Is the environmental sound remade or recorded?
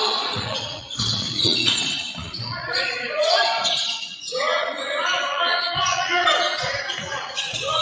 remade